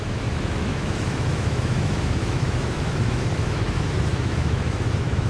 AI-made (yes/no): yes